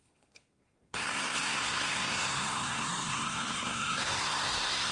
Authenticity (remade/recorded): remade